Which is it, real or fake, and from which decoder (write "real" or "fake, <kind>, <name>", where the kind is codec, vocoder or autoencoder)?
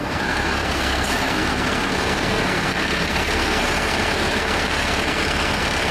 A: fake, codec, SNAC